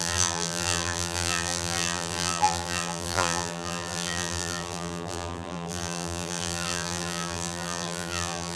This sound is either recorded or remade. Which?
remade